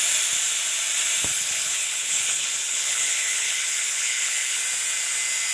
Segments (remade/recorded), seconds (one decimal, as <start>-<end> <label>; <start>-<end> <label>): 0.0-1.3 recorded; 1.3-4.6 remade; 4.6-5.5 recorded